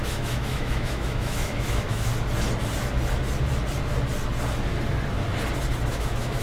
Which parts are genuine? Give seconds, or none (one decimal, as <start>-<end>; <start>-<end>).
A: 2.1-5.9